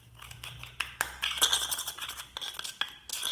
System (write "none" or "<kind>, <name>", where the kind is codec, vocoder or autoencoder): none